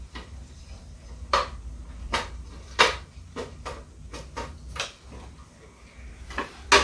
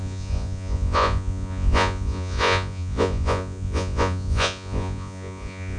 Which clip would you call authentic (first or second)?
first